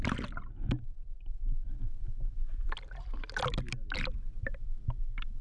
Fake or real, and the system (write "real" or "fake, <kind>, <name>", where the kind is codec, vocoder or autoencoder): real